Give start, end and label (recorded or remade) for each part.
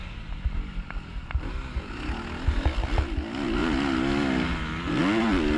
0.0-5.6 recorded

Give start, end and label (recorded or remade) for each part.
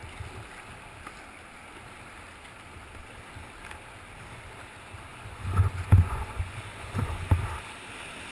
0.0-5.1 recorded; 5.1-7.3 remade; 7.3-8.3 recorded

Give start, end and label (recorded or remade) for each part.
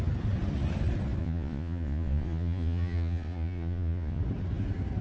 0.0-1.2 recorded; 1.2-4.2 remade; 4.2-5.0 recorded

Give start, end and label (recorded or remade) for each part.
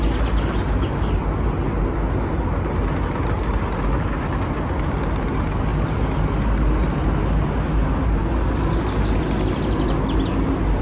0.0-10.8 recorded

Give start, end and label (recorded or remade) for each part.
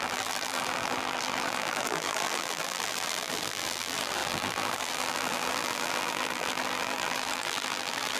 0.0-8.2 remade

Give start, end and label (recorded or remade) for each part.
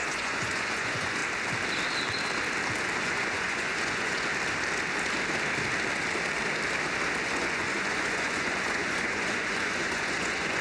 0.0-1.2 remade; 1.2-3.0 recorded; 3.0-4.3 remade; 4.3-7.2 recorded; 7.2-10.6 remade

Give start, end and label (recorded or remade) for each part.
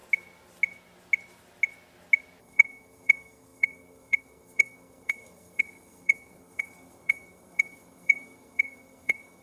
0.0-2.4 recorded; 2.4-9.4 remade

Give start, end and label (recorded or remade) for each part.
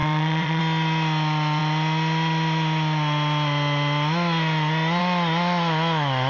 0.0-0.6 remade; 0.6-6.3 recorded